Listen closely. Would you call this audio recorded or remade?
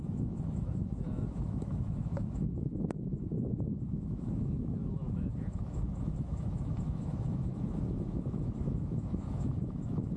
remade